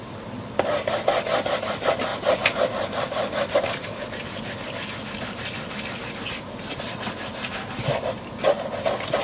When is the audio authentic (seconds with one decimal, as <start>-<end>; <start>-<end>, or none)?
0.0-9.2